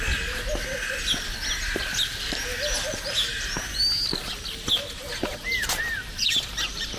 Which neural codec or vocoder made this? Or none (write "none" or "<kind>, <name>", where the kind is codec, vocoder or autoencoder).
none